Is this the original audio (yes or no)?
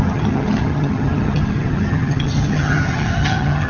no